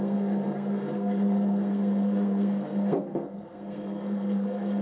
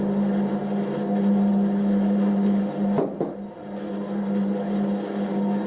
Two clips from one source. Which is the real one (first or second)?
second